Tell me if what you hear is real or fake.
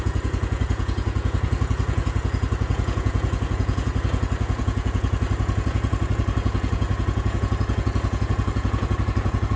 fake